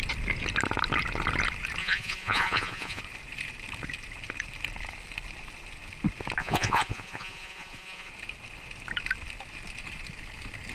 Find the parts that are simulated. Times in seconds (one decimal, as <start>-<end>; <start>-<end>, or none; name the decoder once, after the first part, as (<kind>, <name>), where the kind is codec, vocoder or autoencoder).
1.8-3.0 (vocoder, Vocos); 6.4-8.1